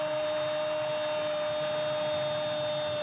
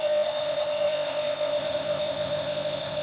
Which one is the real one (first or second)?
first